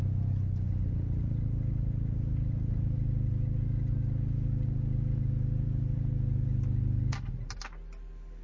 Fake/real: real